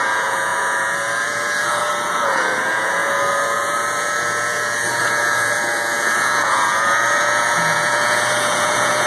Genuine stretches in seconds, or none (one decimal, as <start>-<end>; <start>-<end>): none